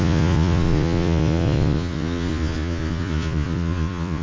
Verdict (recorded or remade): remade